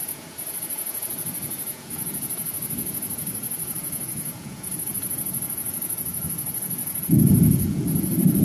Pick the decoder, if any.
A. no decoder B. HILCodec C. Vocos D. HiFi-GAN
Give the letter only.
C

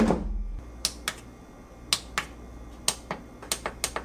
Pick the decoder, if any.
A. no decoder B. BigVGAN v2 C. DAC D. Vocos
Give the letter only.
A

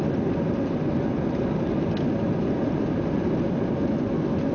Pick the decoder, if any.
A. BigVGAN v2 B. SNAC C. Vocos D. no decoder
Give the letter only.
D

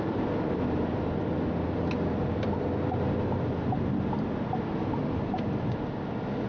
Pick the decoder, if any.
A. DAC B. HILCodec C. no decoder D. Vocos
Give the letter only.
C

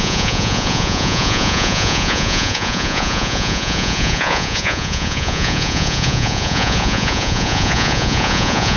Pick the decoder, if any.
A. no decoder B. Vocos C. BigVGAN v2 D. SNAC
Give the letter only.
B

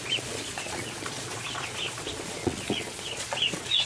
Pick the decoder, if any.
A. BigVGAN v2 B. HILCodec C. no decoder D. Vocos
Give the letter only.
D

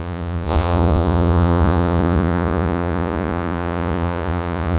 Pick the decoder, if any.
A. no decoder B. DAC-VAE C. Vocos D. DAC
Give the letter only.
C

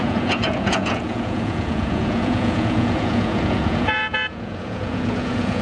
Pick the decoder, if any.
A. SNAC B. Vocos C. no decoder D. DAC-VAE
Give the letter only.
B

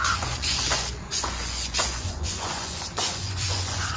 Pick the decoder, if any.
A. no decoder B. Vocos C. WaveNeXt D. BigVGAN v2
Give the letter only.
B